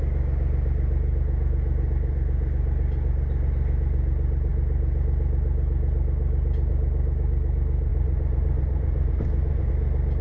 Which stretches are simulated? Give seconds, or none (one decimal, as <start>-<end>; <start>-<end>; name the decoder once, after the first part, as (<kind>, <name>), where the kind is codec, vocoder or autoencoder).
7.9-9.7 (vocoder, BigVGAN v2)